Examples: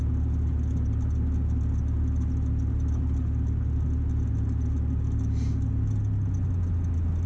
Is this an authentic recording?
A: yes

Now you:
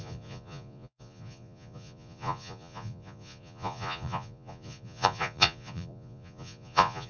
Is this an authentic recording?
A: no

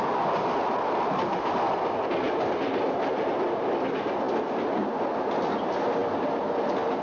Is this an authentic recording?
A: yes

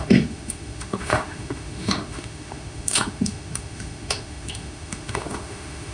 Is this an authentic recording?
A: no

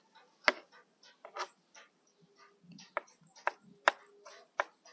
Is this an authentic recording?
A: yes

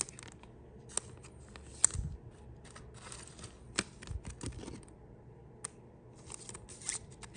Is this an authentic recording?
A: yes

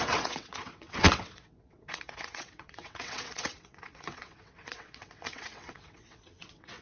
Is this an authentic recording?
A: no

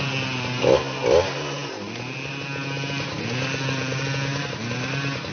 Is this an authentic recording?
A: yes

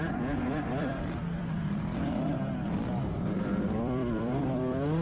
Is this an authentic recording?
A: no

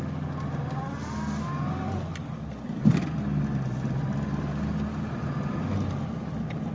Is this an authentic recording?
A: yes